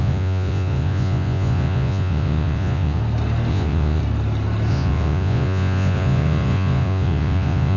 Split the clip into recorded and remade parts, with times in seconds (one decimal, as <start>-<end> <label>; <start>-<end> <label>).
0.0-3.0 remade; 3.0-3.5 recorded; 3.5-4.0 remade; 4.0-4.7 recorded; 4.7-7.8 remade